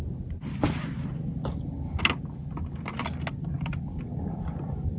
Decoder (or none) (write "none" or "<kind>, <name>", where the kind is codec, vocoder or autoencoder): none